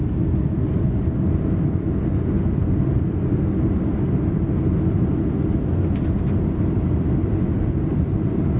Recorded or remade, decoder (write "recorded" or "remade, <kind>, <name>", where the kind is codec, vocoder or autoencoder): recorded